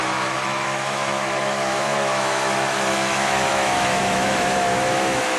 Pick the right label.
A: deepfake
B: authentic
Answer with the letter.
A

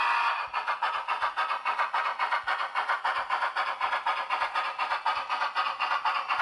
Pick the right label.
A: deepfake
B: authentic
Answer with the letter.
B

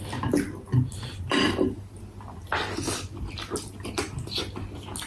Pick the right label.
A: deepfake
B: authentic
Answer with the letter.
B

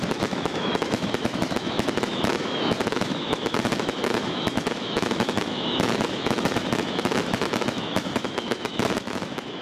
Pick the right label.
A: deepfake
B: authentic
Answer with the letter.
A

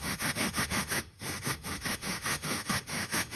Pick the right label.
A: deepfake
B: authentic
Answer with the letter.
A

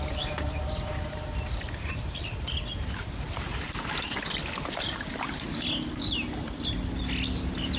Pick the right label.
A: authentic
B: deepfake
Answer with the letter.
A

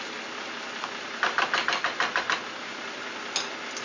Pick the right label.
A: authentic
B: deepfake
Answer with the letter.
A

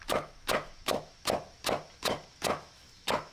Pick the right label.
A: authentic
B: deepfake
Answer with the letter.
B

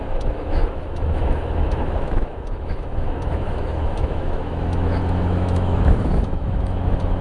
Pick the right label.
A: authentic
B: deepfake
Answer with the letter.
B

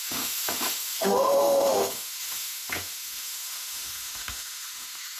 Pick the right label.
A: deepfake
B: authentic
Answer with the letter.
A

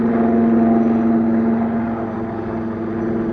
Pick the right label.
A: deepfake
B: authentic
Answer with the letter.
B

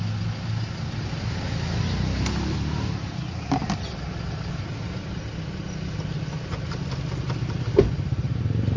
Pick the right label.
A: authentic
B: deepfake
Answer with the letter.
A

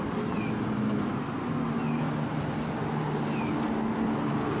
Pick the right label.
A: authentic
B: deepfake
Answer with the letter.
A